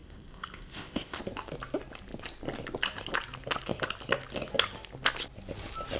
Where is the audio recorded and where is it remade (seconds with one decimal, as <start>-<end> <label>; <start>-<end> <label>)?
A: 0.0-1.2 remade; 1.2-6.0 recorded